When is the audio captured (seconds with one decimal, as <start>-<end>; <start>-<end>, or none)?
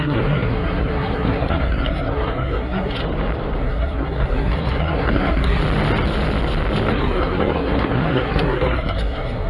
3.0-3.6; 5.6-6.9